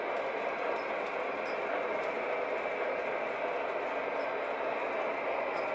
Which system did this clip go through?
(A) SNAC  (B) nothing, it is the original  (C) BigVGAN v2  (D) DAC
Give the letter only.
B